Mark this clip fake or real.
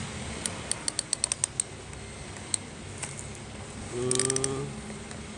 real